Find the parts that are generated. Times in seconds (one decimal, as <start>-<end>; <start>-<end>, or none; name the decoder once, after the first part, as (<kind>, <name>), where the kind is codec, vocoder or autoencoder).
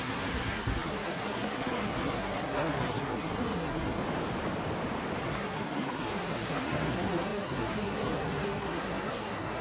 0.0-4.0 (codec, SNAC); 5.2-9.6